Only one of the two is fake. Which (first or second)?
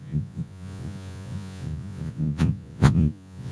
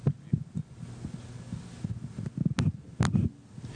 first